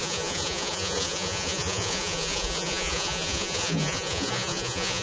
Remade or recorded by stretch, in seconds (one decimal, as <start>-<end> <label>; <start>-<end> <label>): 0.0-5.0 remade